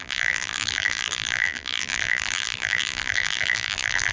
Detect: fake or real fake